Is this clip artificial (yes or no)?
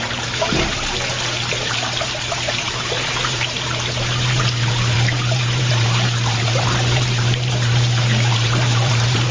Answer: yes